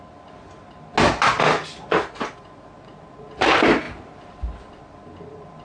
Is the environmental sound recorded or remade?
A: recorded